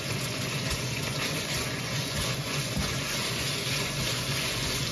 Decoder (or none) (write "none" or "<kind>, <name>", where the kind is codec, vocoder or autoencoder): vocoder, Vocos